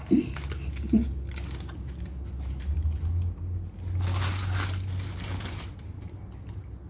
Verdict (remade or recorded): recorded